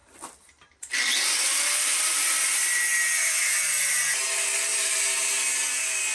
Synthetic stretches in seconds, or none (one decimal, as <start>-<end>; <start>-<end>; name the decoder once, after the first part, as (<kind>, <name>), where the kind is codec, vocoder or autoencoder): none